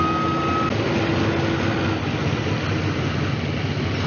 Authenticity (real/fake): real